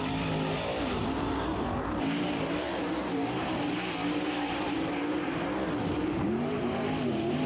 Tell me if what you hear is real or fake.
fake